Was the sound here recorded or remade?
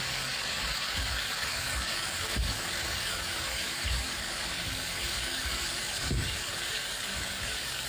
remade